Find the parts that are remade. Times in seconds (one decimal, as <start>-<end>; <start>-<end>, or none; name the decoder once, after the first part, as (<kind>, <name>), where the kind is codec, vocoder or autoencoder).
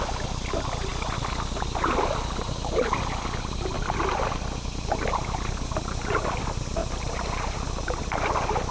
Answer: none